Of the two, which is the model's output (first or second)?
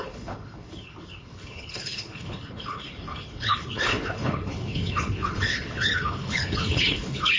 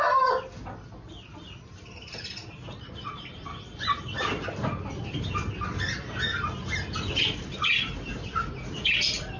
first